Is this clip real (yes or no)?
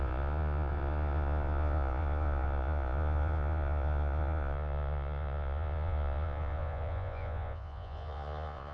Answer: no